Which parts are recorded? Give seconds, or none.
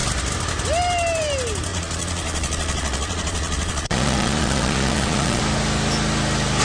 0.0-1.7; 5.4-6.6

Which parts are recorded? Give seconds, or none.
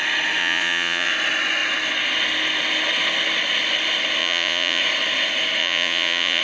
0.0-0.4; 1.1-4.2; 4.8-5.6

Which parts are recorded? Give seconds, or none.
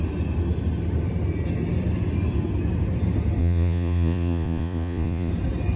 0.0-3.4; 5.3-5.8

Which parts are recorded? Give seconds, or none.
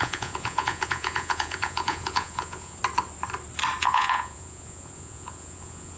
2.8-3.8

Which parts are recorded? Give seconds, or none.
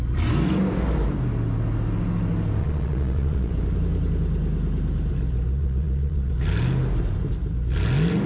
0.0-2.6; 3.5-5.5; 6.3-8.3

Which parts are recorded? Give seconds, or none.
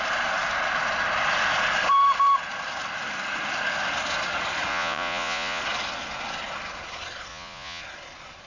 0.0-4.7; 5.6-7.3; 7.8-8.5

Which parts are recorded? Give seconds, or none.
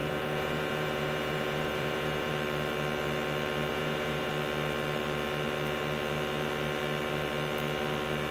2.3-3.7; 4.3-8.3